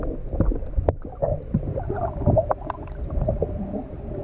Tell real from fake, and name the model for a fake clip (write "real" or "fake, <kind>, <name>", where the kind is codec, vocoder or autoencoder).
real